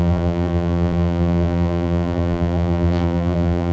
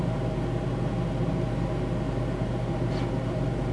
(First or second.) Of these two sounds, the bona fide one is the second